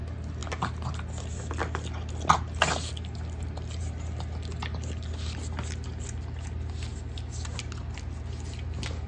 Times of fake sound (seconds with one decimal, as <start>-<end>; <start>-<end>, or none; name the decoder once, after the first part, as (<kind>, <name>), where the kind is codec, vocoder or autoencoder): none